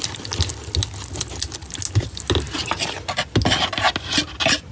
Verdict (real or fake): real